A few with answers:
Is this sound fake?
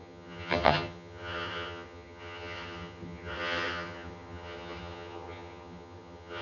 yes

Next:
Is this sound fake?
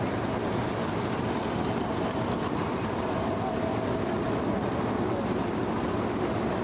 no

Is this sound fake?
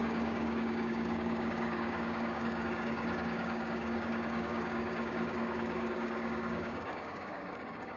yes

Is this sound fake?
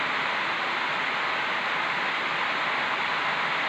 no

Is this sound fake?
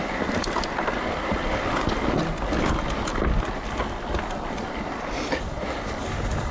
no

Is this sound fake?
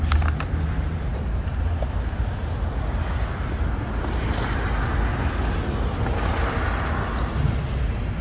no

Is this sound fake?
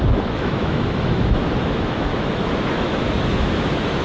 yes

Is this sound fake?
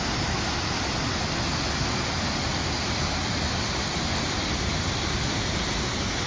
no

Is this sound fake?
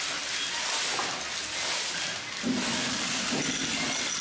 no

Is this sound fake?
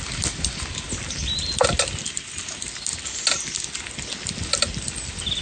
no